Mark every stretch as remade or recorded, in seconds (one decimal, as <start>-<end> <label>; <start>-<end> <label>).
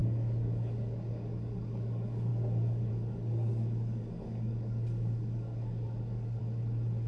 0.0-6.4 remade; 6.4-7.1 recorded